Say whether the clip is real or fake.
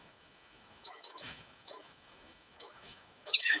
fake